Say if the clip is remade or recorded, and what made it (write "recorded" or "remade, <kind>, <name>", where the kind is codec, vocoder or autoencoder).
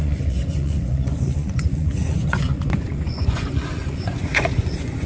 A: remade, vocoder, Vocos